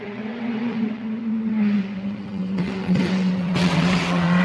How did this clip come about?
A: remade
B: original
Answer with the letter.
A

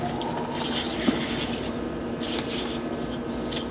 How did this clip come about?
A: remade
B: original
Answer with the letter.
B